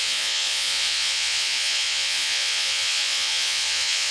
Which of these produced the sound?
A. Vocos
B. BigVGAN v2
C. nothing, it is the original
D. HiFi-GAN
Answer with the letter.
A